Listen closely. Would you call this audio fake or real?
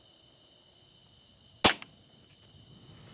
real